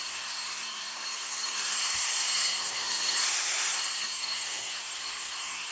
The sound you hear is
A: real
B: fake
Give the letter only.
B